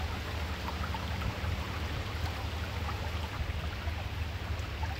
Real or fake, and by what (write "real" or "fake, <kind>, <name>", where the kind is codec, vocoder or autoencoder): real